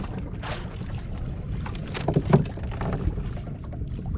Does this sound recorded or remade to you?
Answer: recorded